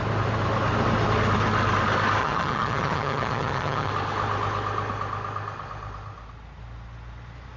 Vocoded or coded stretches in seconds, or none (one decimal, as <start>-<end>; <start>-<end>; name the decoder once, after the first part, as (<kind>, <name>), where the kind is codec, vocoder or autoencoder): 2.2-3.9 (vocoder, HiFi-GAN)